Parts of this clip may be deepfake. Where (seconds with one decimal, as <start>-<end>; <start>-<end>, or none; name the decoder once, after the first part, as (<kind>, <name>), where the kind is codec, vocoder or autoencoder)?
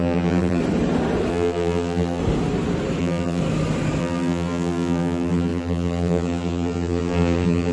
0.0-0.6 (vocoder, BigVGAN v2); 1.3-2.2; 3.0-3.4; 4.0-7.7